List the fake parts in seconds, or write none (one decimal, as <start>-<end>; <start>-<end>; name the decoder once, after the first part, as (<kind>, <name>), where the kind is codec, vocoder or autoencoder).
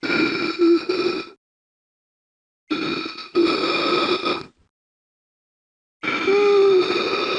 none